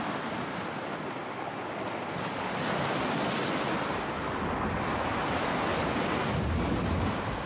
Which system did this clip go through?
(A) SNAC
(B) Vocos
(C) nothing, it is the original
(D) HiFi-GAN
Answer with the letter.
C